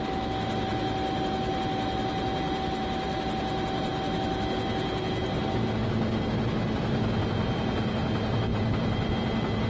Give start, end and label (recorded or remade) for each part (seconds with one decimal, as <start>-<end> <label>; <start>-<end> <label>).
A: 0.0-8.5 recorded; 8.5-9.1 remade; 9.1-9.7 recorded